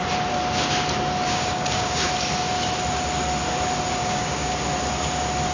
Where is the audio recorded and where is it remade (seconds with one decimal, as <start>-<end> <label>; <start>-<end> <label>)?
0.0-1.3 recorded; 1.3-2.1 remade; 2.1-4.0 recorded; 4.0-4.5 remade; 4.5-5.5 recorded

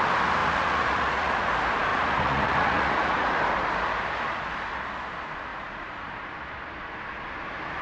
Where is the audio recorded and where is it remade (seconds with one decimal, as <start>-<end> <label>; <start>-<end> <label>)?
0.0-0.4 recorded; 0.4-1.5 remade; 1.5-1.9 recorded; 1.9-3.4 remade; 3.4-5.5 recorded; 5.5-6.1 remade; 6.1-7.8 recorded